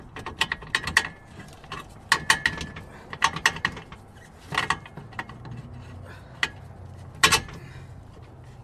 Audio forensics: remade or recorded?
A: recorded